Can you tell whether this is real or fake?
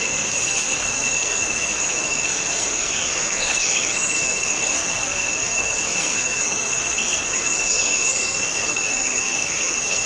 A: fake